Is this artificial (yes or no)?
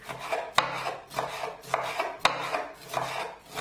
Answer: no